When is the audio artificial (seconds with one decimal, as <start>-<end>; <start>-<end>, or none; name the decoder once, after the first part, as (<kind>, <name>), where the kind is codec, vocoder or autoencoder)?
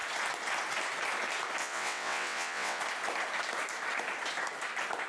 1.6-2.8 (vocoder, WaveNeXt)